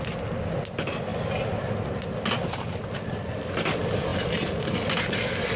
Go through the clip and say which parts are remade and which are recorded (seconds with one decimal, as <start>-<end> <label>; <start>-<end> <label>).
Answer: 0.0-5.6 recorded